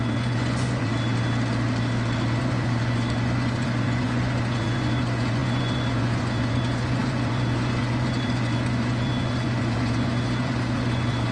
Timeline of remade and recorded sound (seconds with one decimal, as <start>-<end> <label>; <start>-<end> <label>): 0.0-0.9 remade; 0.9-2.4 recorded; 2.4-11.3 remade